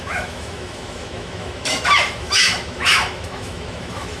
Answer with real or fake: fake